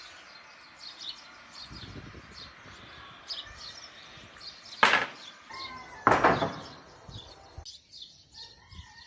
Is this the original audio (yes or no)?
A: yes